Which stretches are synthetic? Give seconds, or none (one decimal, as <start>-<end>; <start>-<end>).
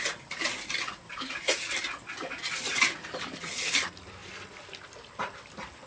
none